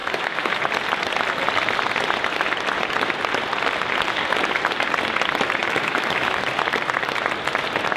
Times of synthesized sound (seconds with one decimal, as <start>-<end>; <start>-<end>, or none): 0.0-0.6; 5.6-6.4